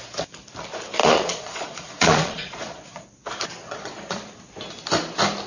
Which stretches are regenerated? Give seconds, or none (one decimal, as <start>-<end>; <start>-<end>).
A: 1.0-3.0; 3.6-4.3